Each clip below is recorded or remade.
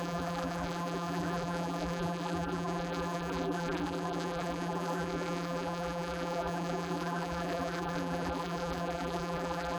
remade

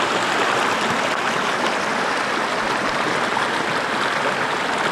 recorded